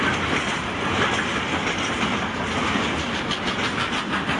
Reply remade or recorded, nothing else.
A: recorded